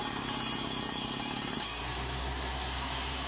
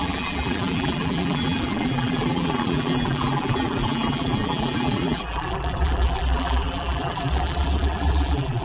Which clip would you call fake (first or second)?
second